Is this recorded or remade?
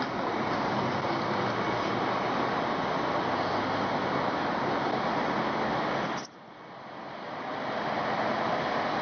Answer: recorded